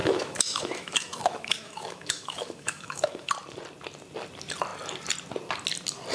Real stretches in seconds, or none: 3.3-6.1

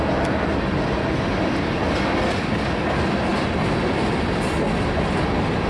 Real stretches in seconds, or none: 0.0-5.7

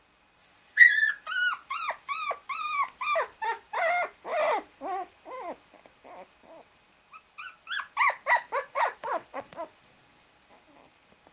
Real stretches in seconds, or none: 0.0-0.4; 1.1-8.7; 10.0-11.3

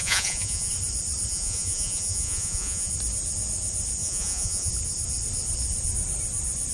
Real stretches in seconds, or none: 0.7-1.3; 2.9-4.0; 4.7-6.7

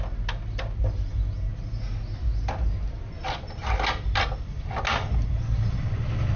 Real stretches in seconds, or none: 0.0-6.4

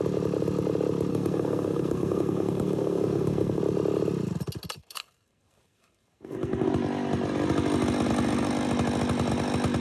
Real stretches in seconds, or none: 0.0-1.1; 3.6-4.8; 6.7-9.8

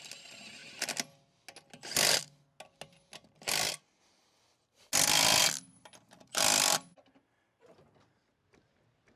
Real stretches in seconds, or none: 0.0-9.2